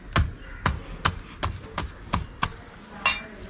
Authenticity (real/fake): real